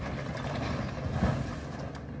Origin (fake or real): real